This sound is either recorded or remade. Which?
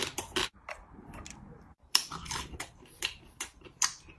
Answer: remade